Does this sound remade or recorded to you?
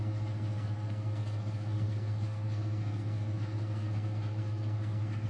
remade